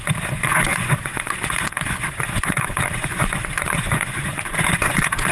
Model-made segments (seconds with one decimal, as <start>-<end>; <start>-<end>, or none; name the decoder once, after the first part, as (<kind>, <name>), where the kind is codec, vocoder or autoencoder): 0.0-5.3 (vocoder, Vocos)